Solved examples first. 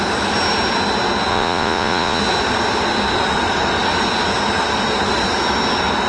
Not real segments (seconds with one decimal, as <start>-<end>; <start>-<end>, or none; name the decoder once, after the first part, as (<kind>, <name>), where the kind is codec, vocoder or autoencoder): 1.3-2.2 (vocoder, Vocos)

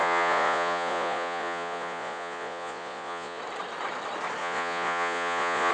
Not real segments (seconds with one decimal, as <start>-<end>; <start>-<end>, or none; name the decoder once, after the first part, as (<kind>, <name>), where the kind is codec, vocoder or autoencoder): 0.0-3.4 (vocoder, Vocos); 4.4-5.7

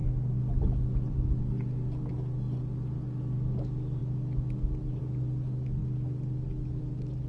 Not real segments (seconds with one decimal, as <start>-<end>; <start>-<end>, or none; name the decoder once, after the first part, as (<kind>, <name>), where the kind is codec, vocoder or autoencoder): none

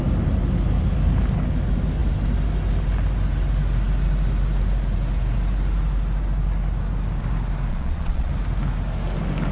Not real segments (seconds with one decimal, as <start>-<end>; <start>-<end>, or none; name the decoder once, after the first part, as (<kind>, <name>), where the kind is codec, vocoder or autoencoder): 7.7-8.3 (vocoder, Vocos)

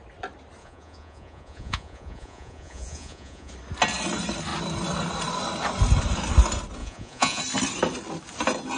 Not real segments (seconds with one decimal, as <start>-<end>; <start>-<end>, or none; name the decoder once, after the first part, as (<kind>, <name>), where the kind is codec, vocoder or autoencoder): 0.6-3.5 (vocoder, Vocos); 6.8-7.4